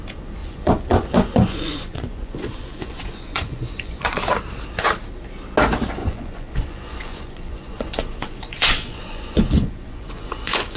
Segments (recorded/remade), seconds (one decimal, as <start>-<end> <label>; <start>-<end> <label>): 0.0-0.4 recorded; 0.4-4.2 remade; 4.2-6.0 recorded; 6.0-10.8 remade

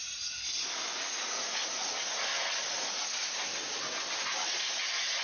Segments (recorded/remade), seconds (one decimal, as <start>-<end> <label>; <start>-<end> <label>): 0.0-0.5 remade; 0.5-0.9 recorded; 0.9-1.9 remade; 1.9-5.2 recorded

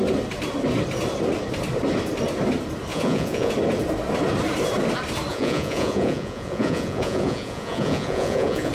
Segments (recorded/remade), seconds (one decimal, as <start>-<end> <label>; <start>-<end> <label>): 0.0-2.9 recorded; 2.9-3.5 remade; 3.5-5.3 recorded; 5.3-8.7 remade

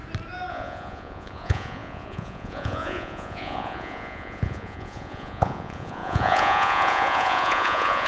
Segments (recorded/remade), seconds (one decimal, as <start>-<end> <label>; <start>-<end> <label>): 0.0-0.5 recorded; 0.5-8.1 remade

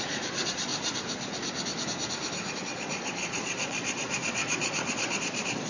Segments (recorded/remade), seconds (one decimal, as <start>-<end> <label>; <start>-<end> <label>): 0.0-0.7 remade; 0.7-2.6 recorded; 2.6-5.7 remade

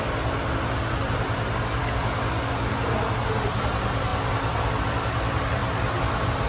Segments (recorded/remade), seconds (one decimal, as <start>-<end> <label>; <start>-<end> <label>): 0.0-6.5 recorded

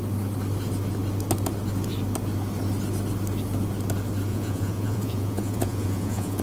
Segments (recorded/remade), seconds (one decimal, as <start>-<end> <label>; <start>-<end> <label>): 0.0-4.3 recorded; 4.3-6.4 remade

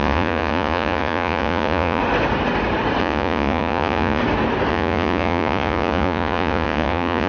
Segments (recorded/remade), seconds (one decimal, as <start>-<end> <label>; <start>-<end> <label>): 0.0-2.0 remade; 2.0-3.0 recorded; 3.0-4.2 remade; 4.2-4.7 recorded; 4.7-7.3 remade